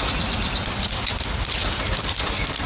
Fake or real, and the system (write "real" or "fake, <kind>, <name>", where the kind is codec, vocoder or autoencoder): real